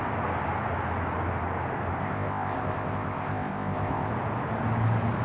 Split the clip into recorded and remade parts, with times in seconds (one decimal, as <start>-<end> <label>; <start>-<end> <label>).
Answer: 0.0-2.0 recorded; 2.0-4.1 remade; 4.1-5.2 recorded